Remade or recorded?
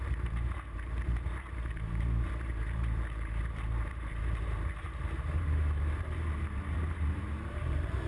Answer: remade